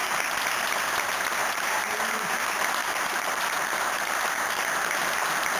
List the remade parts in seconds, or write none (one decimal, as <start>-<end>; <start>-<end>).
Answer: 1.4-2.4; 2.8-4.7